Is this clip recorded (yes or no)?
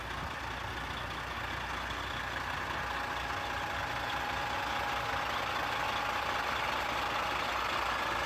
yes